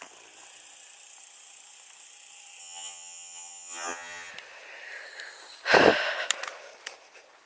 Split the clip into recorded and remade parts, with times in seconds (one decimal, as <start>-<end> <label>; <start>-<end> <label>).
0.0-2.6 recorded; 2.6-4.3 remade; 4.3-7.5 recorded